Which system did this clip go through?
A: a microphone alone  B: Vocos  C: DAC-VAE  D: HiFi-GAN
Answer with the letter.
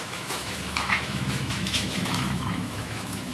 C